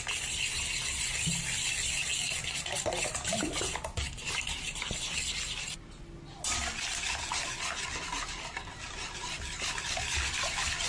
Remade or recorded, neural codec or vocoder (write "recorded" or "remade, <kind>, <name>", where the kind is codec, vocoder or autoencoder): recorded